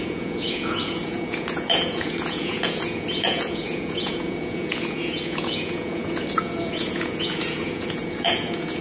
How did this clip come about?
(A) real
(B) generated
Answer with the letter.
B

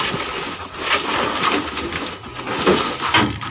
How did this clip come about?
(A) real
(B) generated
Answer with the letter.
A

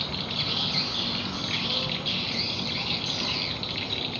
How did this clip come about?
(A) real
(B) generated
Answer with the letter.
A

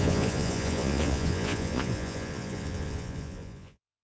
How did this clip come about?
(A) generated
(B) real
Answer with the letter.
A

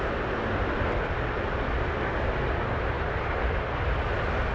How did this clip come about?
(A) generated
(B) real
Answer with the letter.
B